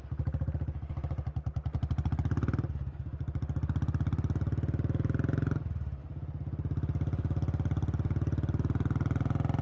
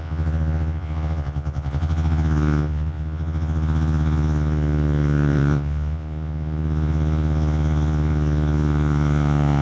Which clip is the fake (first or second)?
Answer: second